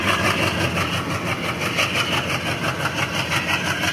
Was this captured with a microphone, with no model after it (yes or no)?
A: yes